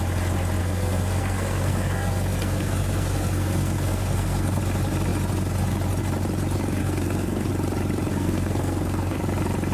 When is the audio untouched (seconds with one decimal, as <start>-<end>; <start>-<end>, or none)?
0.0-0.6; 4.6-6.8; 7.5-8.1; 9.2-9.7